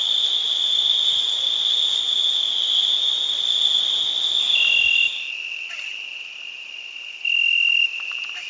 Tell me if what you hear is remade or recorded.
recorded